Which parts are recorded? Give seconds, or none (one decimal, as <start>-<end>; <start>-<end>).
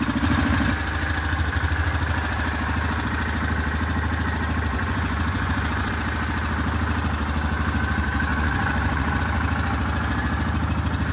0.0-4.7; 5.9-8.3; 9.2-11.1